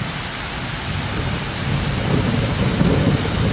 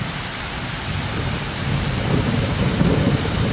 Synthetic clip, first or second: second